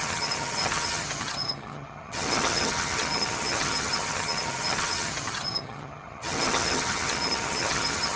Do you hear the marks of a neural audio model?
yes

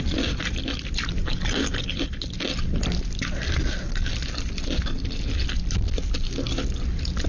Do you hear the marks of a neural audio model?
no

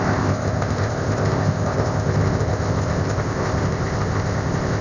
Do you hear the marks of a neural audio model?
yes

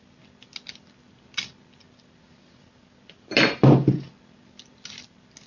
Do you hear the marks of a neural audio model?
no